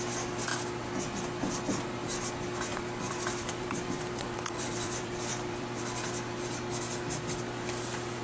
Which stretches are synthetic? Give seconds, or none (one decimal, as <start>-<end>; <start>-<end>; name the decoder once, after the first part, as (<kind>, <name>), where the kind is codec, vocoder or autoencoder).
2.7-5.8 (vocoder, BigVGAN v2)